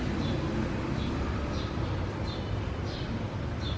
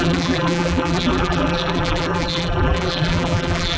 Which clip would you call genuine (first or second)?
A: first